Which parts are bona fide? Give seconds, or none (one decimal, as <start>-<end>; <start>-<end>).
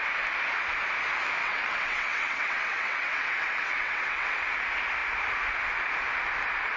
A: 0.0-1.4; 4.4-6.8